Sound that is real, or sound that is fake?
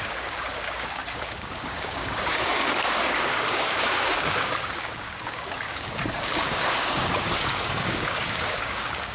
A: fake